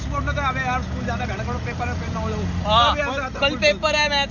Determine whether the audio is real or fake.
real